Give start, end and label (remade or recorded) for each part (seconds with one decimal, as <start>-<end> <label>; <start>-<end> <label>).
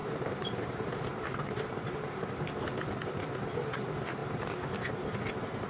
0.0-2.5 remade; 2.5-5.7 recorded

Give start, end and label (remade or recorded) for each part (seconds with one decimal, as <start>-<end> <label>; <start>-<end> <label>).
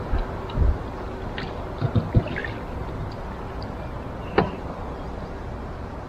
0.0-6.1 recorded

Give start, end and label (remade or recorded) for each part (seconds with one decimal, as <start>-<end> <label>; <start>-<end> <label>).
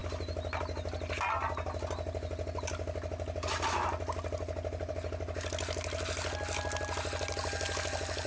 0.0-8.3 recorded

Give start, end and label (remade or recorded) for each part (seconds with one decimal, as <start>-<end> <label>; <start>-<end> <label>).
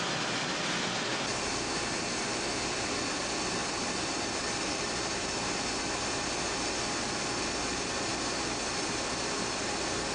0.0-1.1 recorded; 1.1-1.7 remade; 1.7-3.6 recorded; 3.6-5.7 remade; 5.7-10.1 recorded